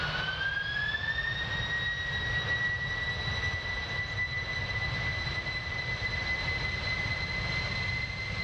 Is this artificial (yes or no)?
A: no